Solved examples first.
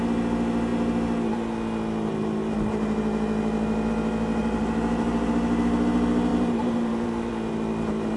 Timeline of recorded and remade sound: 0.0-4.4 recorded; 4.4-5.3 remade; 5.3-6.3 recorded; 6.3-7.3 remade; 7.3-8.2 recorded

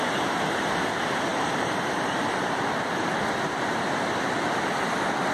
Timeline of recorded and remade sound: 0.0-1.3 recorded; 1.3-2.6 remade; 2.6-5.3 recorded

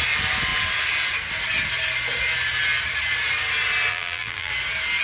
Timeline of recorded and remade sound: 0.0-3.9 recorded; 3.9-4.5 remade; 4.5-5.0 recorded

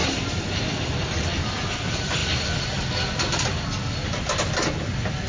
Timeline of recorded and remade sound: 0.0-2.2 remade; 2.2-4.8 recorded; 4.8-5.3 remade

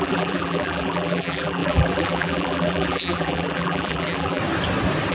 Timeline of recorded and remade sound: 0.0-4.4 remade; 4.4-5.1 recorded

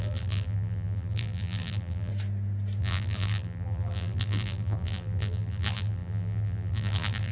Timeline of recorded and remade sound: 0.0-2.1 remade; 2.1-2.8 recorded; 2.8-7.3 remade